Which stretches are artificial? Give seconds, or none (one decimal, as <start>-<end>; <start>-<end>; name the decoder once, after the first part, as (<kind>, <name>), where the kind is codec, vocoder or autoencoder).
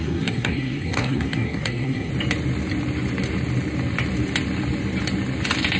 0.0-2.1 (codec, SNAC)